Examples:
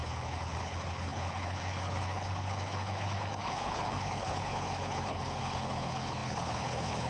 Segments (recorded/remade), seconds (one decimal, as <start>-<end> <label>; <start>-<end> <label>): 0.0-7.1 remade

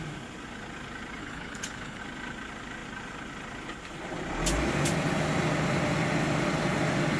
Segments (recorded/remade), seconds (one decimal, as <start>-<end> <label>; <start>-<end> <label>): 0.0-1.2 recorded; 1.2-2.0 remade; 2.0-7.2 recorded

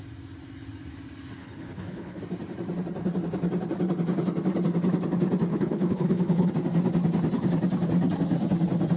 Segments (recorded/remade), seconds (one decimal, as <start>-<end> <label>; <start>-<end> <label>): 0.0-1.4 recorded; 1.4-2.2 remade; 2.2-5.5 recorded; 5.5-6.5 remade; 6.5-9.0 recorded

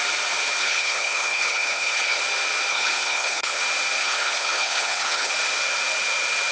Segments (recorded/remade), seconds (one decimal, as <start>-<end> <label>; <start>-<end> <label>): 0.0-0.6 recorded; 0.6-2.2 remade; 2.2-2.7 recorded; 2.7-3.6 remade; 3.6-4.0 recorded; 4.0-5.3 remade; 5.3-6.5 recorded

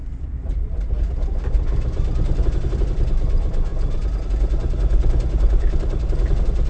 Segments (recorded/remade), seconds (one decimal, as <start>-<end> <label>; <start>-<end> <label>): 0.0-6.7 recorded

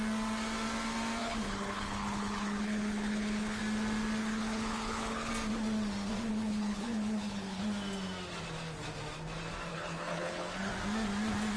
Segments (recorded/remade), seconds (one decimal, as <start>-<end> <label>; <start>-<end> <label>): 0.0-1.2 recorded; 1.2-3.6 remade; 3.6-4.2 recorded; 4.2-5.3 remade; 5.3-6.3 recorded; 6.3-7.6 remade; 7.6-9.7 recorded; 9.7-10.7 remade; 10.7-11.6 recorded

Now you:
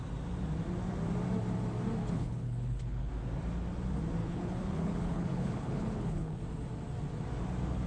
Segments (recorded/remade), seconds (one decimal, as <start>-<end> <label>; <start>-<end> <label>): 0.0-2.0 recorded; 2.0-3.1 remade; 3.1-4.2 recorded; 4.2-6.4 remade; 6.4-7.9 recorded